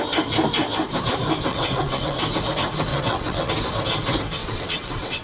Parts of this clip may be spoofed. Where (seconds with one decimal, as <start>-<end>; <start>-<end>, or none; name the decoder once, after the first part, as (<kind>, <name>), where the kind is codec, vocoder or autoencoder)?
1.5-2.2 (vocoder, WaveNeXt); 2.9-3.5; 4.4-5.2